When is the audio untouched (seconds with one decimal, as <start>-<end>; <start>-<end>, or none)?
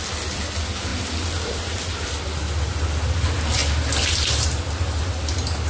0.0-5.7